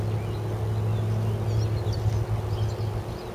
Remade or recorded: recorded